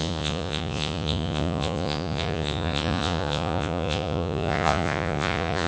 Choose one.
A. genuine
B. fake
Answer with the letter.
B